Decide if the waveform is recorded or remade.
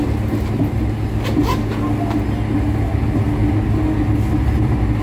recorded